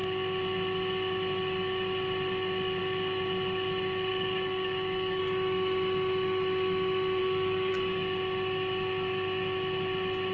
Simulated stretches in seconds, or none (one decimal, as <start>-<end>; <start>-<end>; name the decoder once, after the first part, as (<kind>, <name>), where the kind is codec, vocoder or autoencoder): 4.1-5.2 (codec, DAC); 7.2-7.7

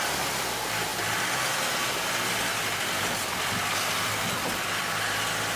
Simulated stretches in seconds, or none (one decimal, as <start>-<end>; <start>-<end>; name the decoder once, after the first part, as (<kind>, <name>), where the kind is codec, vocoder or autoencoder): none

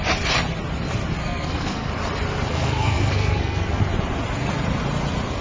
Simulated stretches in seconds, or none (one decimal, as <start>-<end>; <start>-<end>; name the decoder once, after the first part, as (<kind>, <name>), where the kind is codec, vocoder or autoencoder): 1.2-1.9 (codec, SNAC); 2.5-3.8